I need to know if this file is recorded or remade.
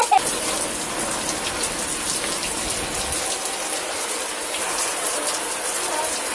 recorded